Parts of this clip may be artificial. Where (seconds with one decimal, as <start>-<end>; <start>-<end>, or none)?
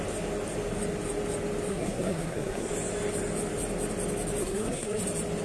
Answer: 1.7-2.7; 4.4-5.0